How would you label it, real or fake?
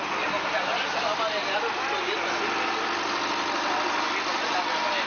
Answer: real